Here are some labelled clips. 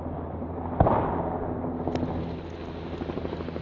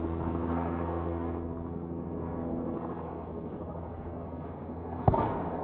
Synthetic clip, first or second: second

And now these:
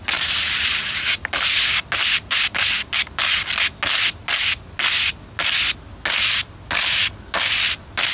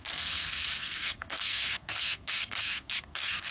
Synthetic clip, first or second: second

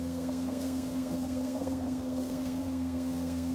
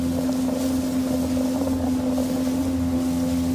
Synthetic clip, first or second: first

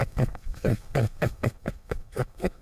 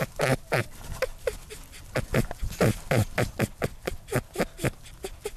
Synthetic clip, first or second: first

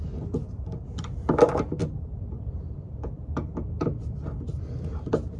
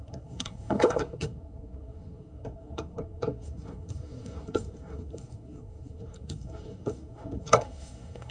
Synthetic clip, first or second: second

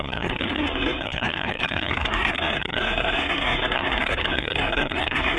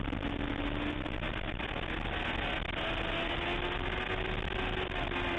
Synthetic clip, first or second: first